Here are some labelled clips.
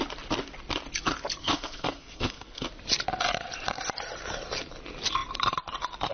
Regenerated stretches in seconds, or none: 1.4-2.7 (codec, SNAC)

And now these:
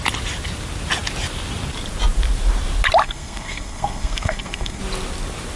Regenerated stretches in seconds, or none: 3.0-4.8 (codec, SNAC)

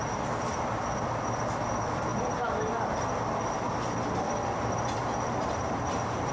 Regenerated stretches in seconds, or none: none

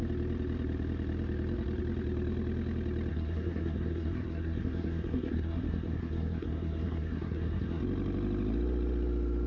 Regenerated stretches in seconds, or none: 3.1-7.8 (codec, SNAC)